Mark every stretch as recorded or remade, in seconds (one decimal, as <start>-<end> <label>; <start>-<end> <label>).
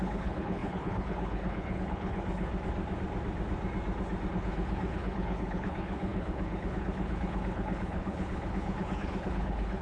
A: 0.0-2.5 remade; 2.5-4.3 recorded; 4.3-9.8 remade